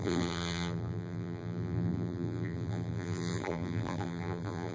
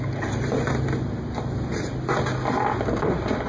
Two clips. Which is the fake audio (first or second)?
first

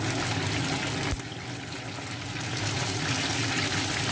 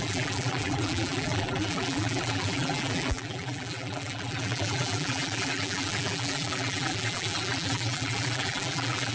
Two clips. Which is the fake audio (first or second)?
second